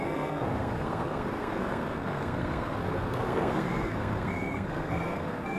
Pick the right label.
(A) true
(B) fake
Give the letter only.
B